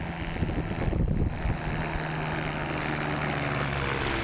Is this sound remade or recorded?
recorded